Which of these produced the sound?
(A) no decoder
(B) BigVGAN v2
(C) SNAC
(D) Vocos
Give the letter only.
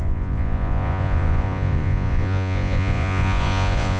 D